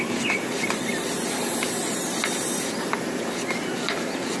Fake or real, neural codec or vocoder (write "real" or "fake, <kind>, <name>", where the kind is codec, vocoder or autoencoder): fake, vocoder, BigVGAN v2